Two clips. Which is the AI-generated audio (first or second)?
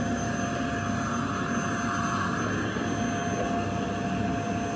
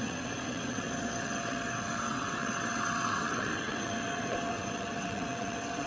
second